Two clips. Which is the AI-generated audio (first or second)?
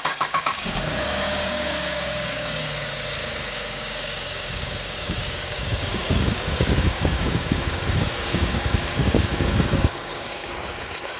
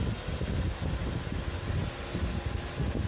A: first